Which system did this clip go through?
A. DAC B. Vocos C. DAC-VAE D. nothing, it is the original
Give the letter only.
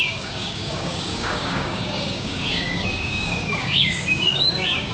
A